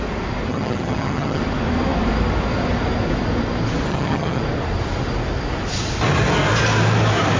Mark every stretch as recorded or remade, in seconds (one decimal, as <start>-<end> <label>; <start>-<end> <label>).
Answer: 0.0-0.5 recorded; 0.5-1.4 remade; 1.4-3.9 recorded; 3.9-4.4 remade; 4.4-7.4 recorded